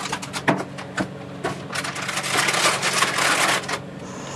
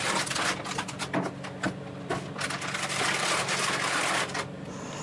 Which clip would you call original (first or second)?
first